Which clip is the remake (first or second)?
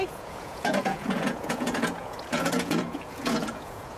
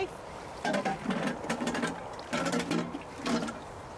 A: first